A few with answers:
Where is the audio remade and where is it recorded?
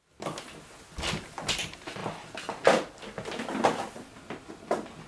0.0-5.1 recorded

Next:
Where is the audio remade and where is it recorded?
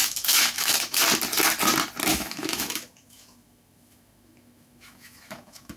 0.0-1.0 remade; 1.0-2.1 recorded; 2.1-5.8 remade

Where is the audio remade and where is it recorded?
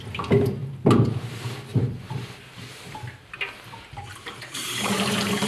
0.0-0.6 recorded; 0.6-1.2 remade; 1.2-1.7 recorded; 1.7-3.2 remade; 3.2-4.1 recorded; 4.1-5.5 remade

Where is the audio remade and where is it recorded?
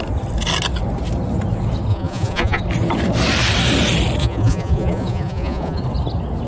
0.0-1.9 recorded; 1.9-2.6 remade; 2.6-4.2 recorded; 4.2-5.8 remade; 5.8-6.5 recorded